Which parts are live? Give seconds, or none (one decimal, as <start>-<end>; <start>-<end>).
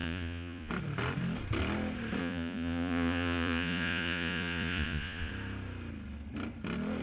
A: 0.7-2.2; 5.3-7.0